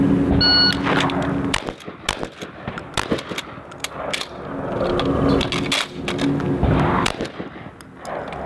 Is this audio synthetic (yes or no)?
no